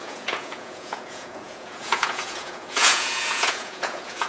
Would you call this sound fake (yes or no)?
yes